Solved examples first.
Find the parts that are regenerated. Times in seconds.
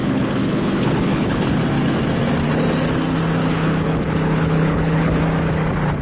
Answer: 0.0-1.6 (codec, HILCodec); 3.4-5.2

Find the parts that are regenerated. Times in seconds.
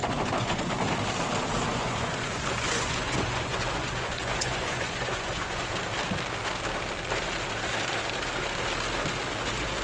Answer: 0.0-0.9 (vocoder, Vocos); 1.7-5.7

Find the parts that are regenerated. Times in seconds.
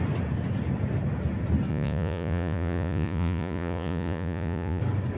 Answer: 1.7-4.8 (vocoder, Vocos)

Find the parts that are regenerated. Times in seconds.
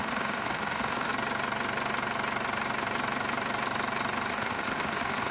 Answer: 0.0-1.1 (autoencoder, DAC-VAE); 4.3-5.3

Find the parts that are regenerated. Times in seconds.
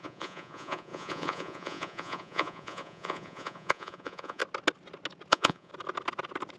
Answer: 0.0-4.4 (vocoder, Vocos); 5.3-5.7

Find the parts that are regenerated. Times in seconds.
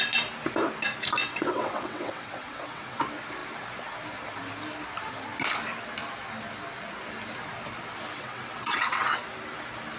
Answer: 1.2-3.0 (vocoder, WaveNeXt); 8.1-9.2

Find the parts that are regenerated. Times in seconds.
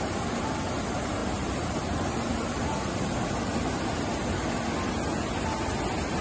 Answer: none